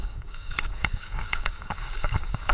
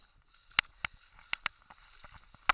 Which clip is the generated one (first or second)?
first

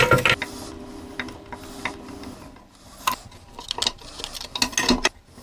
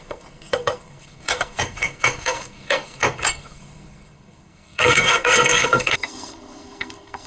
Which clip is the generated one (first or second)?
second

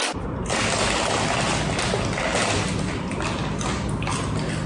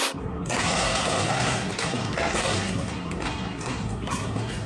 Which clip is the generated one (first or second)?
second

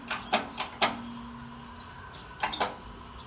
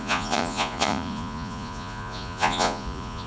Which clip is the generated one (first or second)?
second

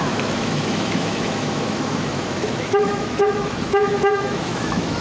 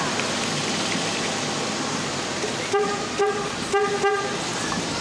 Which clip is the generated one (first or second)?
first